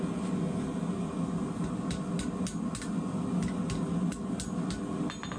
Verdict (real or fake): real